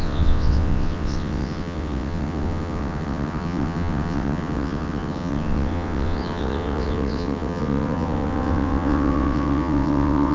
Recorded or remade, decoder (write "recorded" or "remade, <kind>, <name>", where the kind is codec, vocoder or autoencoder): remade, vocoder, WaveNeXt